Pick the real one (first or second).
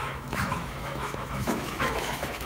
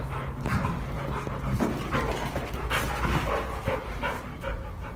second